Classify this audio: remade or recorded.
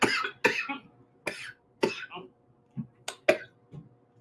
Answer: recorded